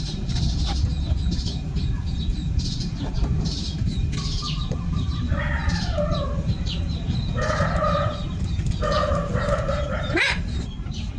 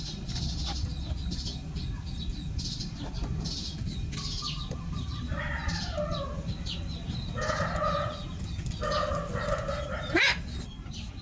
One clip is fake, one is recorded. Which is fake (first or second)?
first